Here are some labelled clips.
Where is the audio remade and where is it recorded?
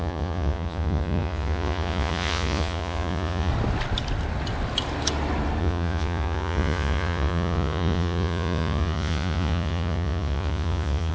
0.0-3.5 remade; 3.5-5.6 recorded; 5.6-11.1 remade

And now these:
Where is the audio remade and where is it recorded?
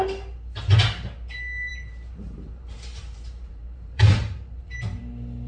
0.0-1.7 recorded; 1.7-5.0 remade; 5.0-5.5 recorded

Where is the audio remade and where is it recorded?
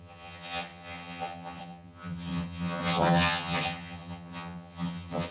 0.0-5.3 remade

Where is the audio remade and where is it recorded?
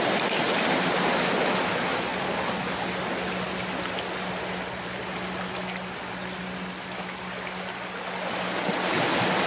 0.0-9.5 recorded